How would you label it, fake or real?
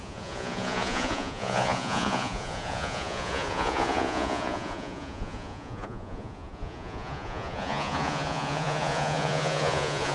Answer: fake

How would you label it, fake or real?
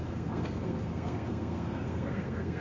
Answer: fake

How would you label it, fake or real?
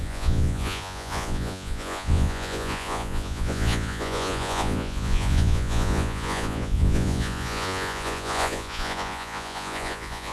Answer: fake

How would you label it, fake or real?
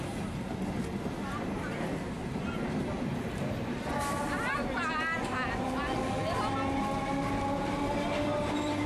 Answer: real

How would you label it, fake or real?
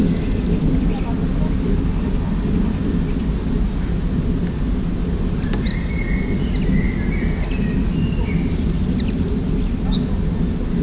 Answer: real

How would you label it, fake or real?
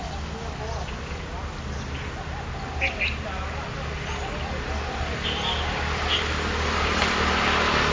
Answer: real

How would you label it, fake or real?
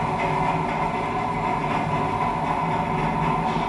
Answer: real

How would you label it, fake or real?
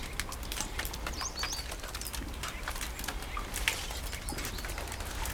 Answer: real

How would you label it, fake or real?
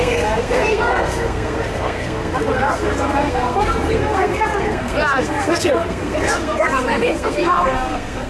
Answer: fake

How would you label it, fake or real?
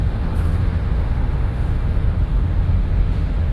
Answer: fake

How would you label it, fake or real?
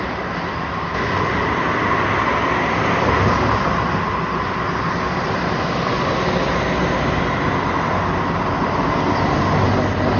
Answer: real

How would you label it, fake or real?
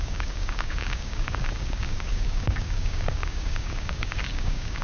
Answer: fake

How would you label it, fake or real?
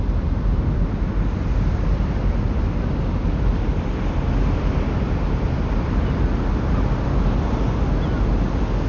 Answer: real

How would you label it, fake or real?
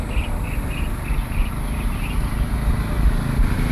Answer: real